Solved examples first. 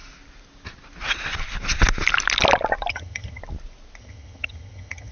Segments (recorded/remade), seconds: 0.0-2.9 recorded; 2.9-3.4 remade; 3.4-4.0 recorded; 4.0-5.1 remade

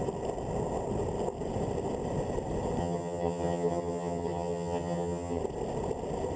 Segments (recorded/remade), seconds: 0.0-2.8 recorded; 2.8-5.4 remade; 5.4-6.4 recorded

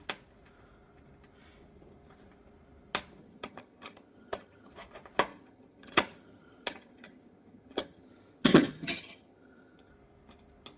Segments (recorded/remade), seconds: 0.0-3.2 recorded; 3.2-4.7 remade; 4.7-5.3 recorded; 5.3-9.9 remade; 9.9-10.8 recorded